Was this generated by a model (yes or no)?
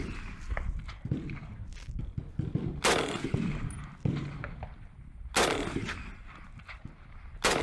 no